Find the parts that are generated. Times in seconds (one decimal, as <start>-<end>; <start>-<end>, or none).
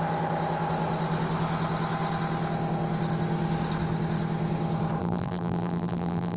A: 5.0-6.4